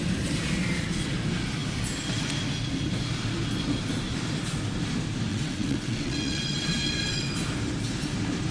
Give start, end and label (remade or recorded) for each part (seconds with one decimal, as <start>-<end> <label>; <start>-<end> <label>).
0.0-5.3 recorded; 5.3-7.3 remade; 7.3-8.5 recorded